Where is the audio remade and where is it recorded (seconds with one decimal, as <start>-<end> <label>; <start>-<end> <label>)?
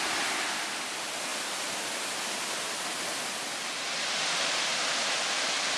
0.0-5.8 recorded